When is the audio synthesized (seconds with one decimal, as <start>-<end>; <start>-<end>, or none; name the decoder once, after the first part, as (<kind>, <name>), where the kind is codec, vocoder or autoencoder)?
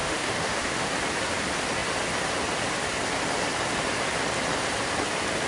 0.0-0.9 (autoencoder, DAC-VAE)